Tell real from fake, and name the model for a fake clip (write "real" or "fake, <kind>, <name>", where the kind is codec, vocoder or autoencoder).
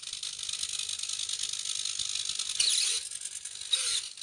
real